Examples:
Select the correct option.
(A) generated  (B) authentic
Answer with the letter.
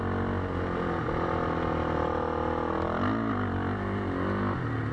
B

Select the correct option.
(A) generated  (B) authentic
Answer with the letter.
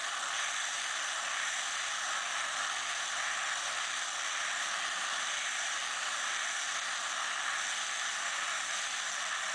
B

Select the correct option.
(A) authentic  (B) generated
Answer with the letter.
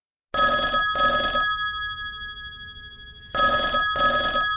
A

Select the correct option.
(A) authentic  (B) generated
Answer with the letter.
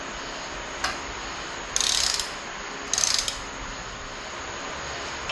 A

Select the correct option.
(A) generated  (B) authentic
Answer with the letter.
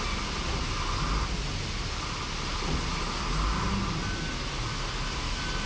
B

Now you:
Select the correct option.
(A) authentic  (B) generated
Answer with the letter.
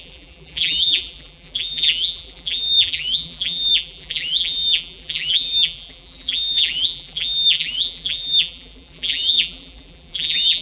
B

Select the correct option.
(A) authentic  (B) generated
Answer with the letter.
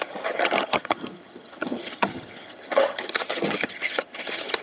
B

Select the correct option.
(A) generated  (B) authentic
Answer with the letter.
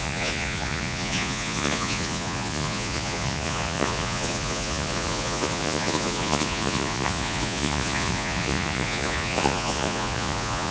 A